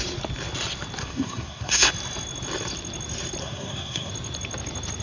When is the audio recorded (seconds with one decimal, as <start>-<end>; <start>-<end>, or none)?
0.0-1.0; 1.9-3.4; 4.1-5.0